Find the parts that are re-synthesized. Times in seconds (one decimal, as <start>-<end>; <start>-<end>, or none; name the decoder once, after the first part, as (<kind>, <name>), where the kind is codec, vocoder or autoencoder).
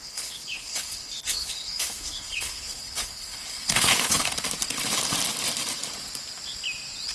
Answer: 0.0-4.3 (codec, HILCodec)